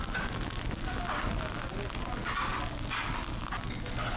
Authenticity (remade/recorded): recorded